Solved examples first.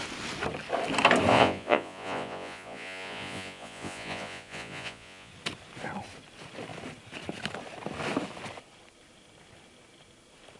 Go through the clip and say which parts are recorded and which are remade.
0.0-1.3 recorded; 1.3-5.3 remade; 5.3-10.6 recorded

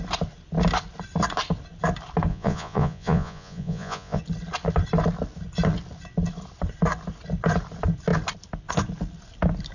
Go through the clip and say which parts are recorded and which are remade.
0.0-2.3 recorded; 2.3-4.2 remade; 4.2-9.7 recorded